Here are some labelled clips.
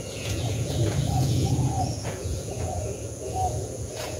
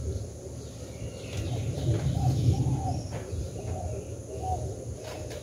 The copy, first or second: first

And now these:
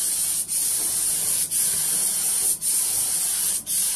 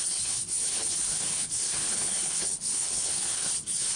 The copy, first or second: second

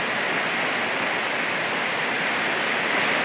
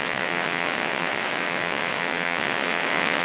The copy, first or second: second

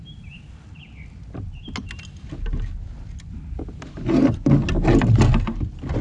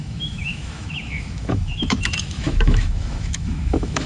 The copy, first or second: second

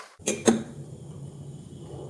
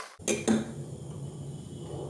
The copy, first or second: first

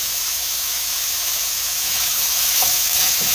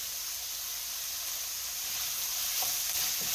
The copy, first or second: first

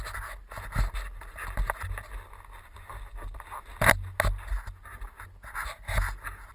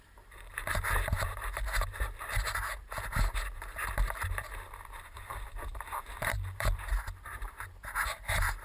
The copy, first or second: second